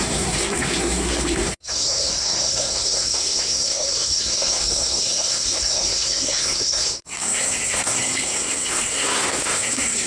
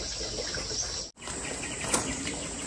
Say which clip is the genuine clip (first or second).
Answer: second